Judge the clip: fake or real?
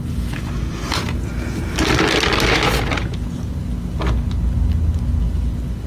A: real